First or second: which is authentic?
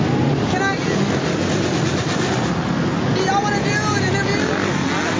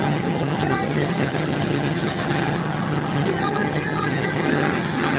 first